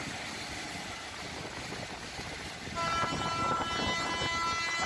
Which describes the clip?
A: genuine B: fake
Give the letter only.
A